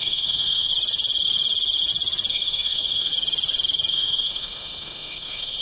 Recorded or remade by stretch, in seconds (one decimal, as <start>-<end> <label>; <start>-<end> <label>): 0.0-0.7 remade; 0.7-2.3 recorded; 2.3-3.1 remade; 3.1-3.9 recorded; 3.9-5.6 remade